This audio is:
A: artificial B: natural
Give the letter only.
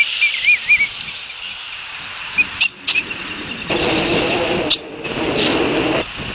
B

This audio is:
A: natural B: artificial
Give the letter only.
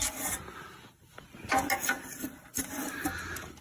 A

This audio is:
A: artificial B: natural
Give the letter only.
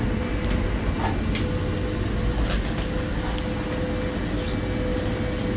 B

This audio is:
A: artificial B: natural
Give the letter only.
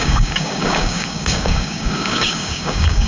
A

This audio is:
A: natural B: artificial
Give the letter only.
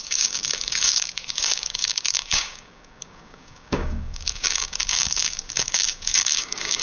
B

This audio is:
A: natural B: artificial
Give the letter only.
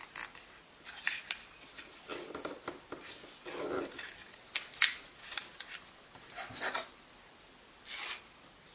A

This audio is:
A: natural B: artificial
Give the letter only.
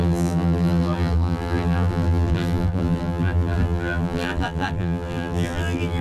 B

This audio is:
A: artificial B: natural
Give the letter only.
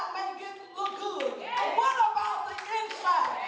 B